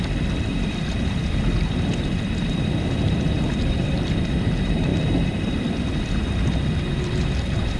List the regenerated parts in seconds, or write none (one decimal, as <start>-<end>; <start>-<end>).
0.5-4.1; 4.9-6.1